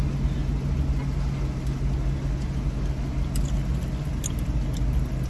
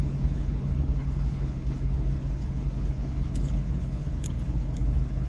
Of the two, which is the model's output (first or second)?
second